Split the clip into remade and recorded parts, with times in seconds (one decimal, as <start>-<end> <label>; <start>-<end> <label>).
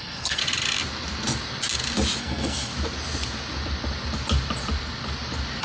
0.0-0.4 remade; 0.4-2.2 recorded; 2.2-2.7 remade; 2.7-5.6 recorded